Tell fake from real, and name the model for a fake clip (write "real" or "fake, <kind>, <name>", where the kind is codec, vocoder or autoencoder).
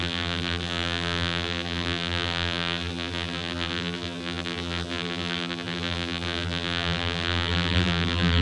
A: fake, vocoder, BigVGAN v2